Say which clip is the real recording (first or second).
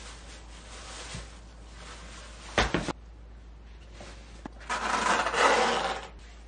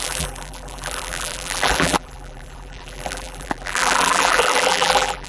first